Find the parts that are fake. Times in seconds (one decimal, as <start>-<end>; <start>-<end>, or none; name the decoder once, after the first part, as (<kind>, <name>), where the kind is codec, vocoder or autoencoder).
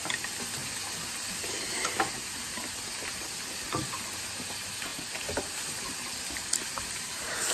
none